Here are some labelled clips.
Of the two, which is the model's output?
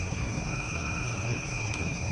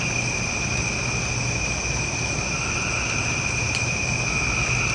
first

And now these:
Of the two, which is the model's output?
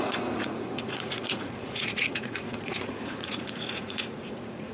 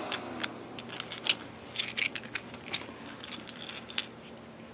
first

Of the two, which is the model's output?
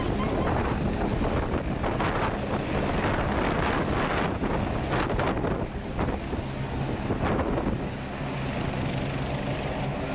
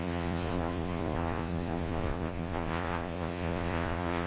second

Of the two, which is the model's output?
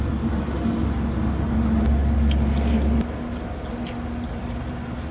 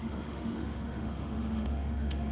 second